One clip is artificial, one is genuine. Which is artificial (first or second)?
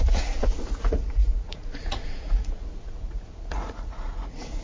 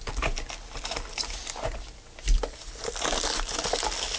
first